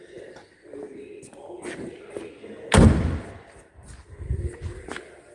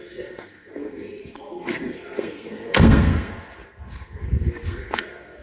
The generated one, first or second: second